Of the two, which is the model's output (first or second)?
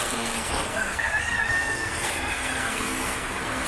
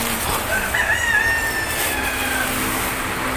first